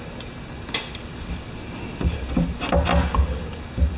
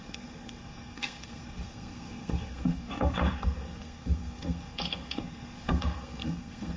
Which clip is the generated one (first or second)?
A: second